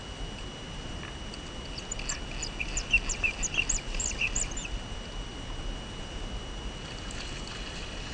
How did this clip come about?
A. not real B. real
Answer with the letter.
B